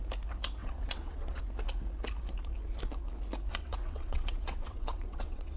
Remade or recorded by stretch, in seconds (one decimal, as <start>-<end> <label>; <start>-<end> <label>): 0.0-0.6 recorded; 0.6-1.4 remade; 1.4-3.5 recorded; 3.5-5.6 remade